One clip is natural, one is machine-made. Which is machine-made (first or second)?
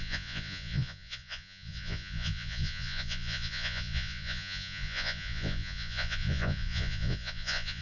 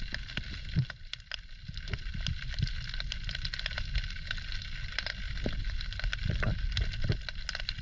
first